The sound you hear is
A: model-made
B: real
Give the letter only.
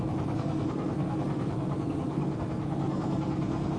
A